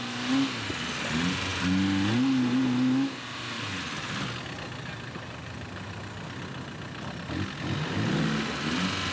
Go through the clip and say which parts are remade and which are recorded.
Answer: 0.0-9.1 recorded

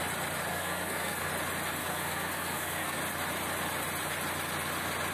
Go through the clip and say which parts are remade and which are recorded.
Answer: 0.0-0.5 recorded; 0.5-1.3 remade; 1.3-1.8 recorded; 1.8-3.0 remade; 3.0-5.1 recorded